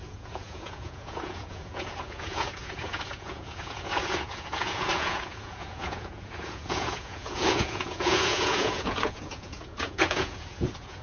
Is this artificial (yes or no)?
yes